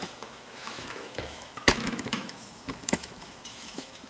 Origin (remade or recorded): remade